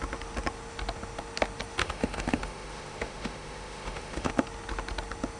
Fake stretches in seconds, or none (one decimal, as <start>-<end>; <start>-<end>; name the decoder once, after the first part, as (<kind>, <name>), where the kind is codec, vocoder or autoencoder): 1.8-4.3 (autoencoder, DAC-VAE)